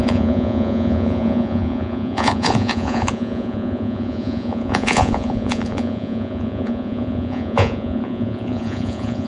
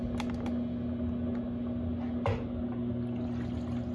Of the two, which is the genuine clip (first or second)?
second